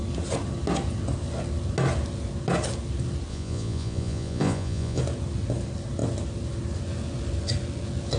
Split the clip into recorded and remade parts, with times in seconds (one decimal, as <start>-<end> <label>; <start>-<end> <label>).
0.0-3.3 recorded; 3.3-5.0 remade; 5.0-8.2 recorded